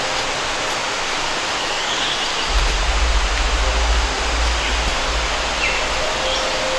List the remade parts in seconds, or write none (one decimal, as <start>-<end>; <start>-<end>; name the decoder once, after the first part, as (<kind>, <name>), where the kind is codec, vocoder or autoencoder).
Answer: 1.6-2.2 (codec, DAC)